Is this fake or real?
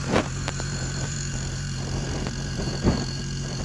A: fake